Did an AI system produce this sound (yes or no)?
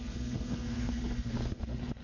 yes